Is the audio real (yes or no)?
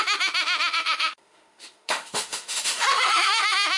no